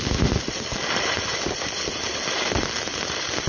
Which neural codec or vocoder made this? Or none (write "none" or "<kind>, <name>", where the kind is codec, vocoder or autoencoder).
none